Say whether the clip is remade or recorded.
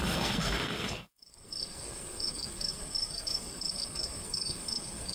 remade